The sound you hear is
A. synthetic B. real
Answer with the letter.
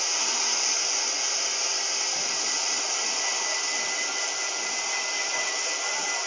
A